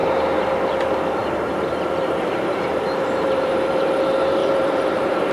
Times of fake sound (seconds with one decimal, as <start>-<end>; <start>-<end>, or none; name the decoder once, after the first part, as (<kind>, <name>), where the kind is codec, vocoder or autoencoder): 1.2-3.9 (vocoder, BigVGAN v2); 4.4-5.3